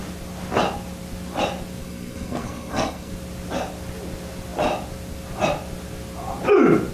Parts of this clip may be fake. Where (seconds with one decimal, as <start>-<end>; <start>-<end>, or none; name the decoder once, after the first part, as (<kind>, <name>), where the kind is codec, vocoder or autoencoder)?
1.8-3.1 (codec, SNAC)